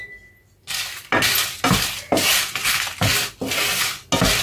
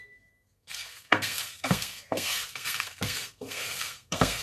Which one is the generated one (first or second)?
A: second